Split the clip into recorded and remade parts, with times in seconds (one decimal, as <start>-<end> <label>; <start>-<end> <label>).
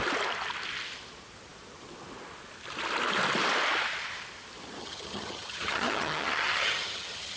0.0-4.8 recorded; 4.8-7.4 remade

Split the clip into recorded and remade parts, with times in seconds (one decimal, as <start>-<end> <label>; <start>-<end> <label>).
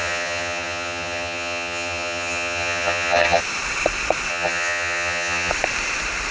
0.0-3.4 remade; 3.4-4.3 recorded; 4.3-5.5 remade; 5.5-6.3 recorded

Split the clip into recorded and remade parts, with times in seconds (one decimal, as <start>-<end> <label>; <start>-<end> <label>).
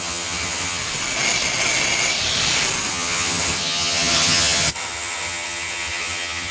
0.0-0.8 remade; 0.8-2.9 recorded; 2.9-6.5 remade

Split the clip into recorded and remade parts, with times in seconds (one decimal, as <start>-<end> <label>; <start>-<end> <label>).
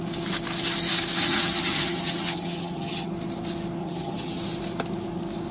0.0-1.2 recorded; 1.2-3.1 remade; 3.1-3.8 recorded; 3.8-4.4 remade; 4.4-5.5 recorded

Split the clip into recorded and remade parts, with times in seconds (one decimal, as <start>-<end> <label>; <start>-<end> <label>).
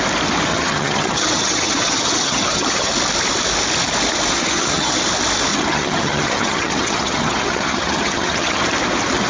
0.0-0.5 recorded; 0.5-2.9 remade; 2.9-4.4 recorded; 4.4-5.0 remade; 5.0-5.5 recorded; 5.5-8.6 remade; 8.6-9.3 recorded